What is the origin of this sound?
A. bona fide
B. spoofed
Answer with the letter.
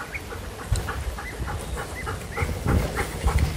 A